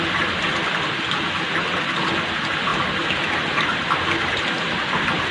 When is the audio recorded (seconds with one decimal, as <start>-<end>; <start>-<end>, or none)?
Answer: 0.0-5.3